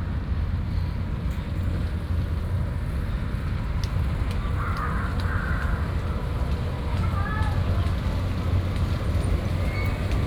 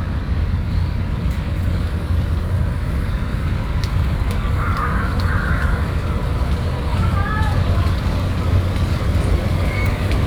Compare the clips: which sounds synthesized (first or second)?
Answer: second